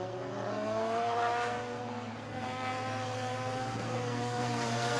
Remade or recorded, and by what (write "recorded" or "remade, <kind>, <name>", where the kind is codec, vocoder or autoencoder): remade, codec, SNAC